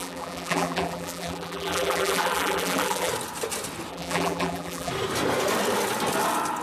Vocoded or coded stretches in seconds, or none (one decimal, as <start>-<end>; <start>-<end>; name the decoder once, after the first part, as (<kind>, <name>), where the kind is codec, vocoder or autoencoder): 0.0-3.1 (vocoder, BigVGAN v2); 3.9-4.9